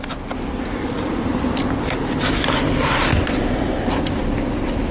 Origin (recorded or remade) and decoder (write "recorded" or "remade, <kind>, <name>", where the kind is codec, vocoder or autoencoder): remade, vocoder, BigVGAN v2